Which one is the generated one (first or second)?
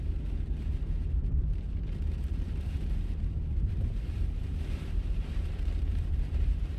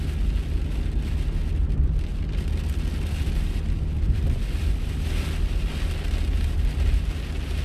first